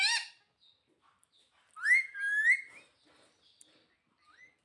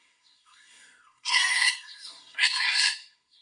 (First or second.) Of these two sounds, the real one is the first